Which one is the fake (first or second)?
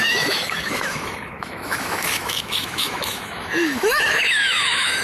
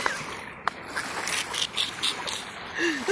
first